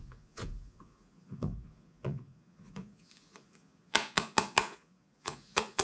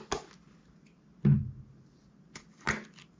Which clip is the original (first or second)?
second